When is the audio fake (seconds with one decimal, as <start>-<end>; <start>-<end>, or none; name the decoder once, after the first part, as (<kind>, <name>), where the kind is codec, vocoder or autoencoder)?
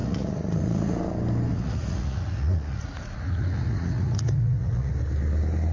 0.0-1.0 (vocoder, Vocos); 1.5-4.9